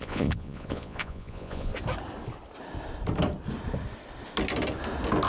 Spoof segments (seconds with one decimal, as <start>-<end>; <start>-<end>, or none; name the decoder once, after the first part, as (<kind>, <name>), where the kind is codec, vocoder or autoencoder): 0.0-1.7 (vocoder, Vocos)